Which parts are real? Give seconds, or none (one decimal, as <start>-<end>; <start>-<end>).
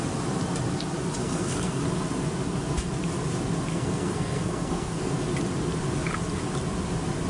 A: 0.0-1.2; 1.8-3.7; 5.1-7.3